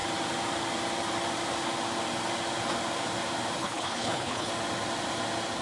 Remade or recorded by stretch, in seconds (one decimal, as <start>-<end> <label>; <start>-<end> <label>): 0.0-3.6 recorded; 3.6-4.5 remade; 4.5-5.6 recorded